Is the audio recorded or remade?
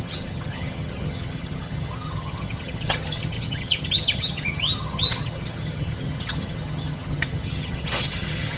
remade